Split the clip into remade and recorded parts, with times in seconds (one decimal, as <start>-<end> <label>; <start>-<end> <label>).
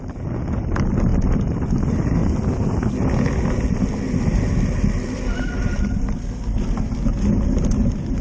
0.0-8.2 recorded